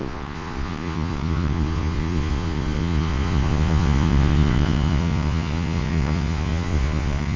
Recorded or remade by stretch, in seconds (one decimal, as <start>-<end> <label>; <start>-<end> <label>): 0.0-7.4 remade